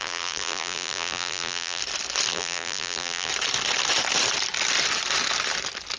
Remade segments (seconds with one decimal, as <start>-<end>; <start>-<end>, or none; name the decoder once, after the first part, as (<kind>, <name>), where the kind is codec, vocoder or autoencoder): 0.0-1.8 (vocoder, BigVGAN v2); 2.3-3.3